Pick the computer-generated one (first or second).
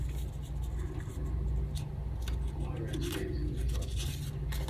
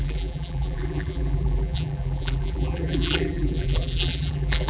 second